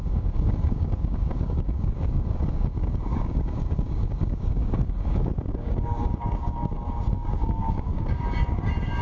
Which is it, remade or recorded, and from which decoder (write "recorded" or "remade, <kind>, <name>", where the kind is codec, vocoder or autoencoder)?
remade, codec, DAC